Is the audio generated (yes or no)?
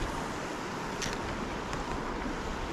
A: no